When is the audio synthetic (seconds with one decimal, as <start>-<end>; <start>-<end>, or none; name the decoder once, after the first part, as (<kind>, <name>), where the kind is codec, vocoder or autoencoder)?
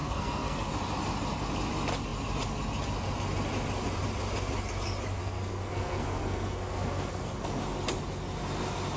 0.0-0.7 (codec, SNAC); 5.2-7.6